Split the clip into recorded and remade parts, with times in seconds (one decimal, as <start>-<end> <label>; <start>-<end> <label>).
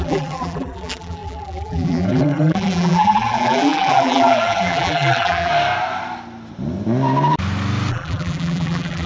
0.0-5.5 remade; 5.5-7.9 recorded; 7.9-9.1 remade